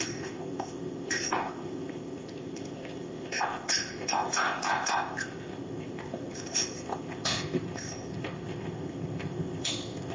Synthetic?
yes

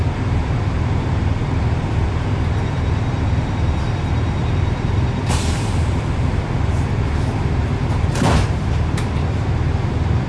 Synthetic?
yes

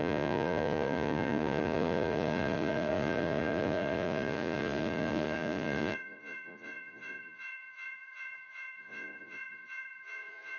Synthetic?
yes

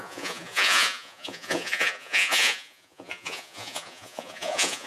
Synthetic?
yes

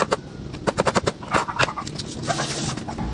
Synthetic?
no